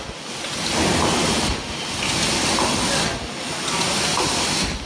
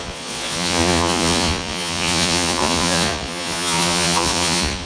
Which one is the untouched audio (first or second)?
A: first